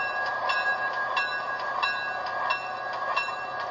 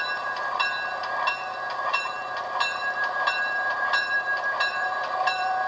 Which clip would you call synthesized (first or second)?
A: second